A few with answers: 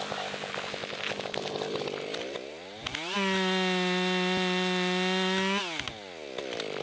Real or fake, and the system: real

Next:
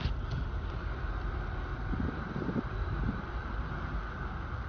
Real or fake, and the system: real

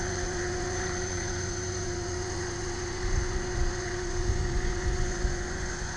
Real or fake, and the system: fake, vocoder, Vocos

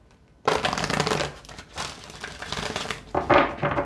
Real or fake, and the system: real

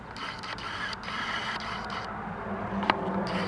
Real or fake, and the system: real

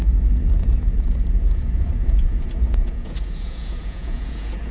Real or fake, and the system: fake, vocoder, Vocos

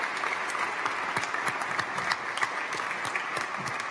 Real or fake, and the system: real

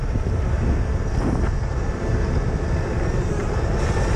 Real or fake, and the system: real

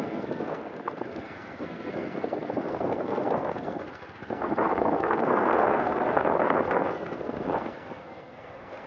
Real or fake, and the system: fake, codec, SNAC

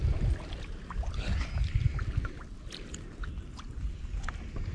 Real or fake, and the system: real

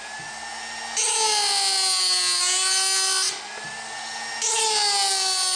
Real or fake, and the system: real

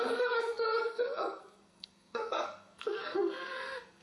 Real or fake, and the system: fake, codec, SNAC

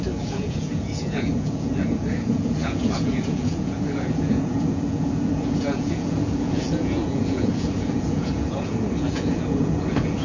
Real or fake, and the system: fake, vocoder, Vocos